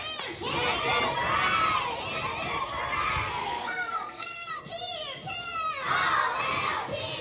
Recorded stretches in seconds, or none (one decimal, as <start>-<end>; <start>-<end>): 0.0-3.4; 4.6-7.2